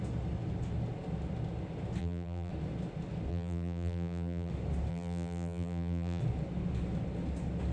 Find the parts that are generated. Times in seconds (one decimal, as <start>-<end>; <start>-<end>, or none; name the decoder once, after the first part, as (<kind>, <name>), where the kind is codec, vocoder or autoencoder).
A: 2.0-2.5 (vocoder, BigVGAN v2); 3.3-4.5; 4.9-6.2